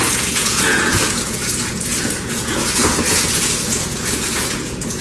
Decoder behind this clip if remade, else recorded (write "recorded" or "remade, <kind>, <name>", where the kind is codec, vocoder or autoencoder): remade, vocoder, Vocos